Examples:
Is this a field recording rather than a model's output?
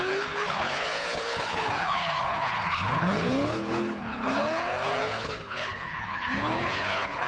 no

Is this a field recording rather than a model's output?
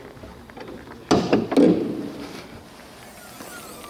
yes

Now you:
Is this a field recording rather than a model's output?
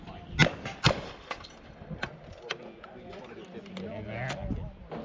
yes